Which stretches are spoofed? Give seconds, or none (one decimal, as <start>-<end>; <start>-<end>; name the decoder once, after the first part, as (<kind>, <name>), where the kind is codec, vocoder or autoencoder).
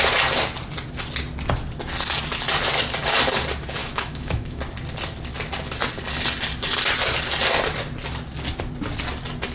3.8-4.6 (autoencoder, DAC-VAE)